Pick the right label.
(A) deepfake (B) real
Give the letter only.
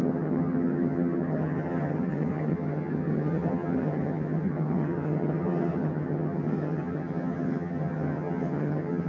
A